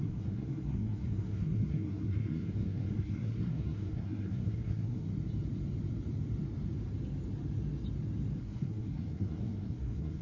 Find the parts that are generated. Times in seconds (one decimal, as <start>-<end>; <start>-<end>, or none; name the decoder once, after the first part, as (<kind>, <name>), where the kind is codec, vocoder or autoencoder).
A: 0.0-5.1 (codec, SNAC); 8.4-10.2